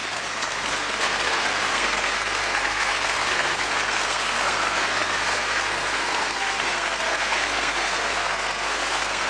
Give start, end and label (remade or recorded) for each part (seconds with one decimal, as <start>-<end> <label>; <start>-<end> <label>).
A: 0.0-9.3 remade